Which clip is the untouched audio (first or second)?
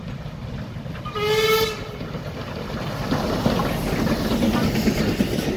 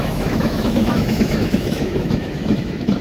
first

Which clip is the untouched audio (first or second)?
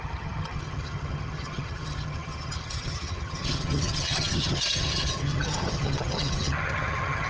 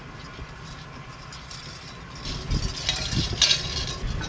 second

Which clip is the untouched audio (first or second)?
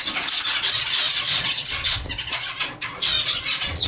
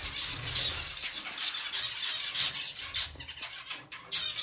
second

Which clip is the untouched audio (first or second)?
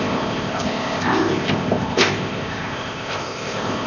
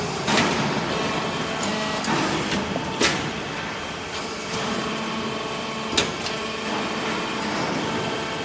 second